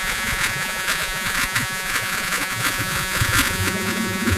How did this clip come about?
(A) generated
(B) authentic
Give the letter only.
A